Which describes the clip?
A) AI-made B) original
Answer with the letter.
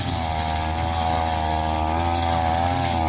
B